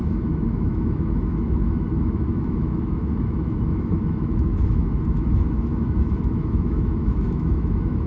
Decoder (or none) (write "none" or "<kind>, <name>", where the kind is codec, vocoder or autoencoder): autoencoder, DAC-VAE